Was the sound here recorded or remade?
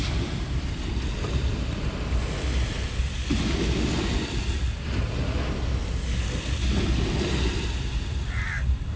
recorded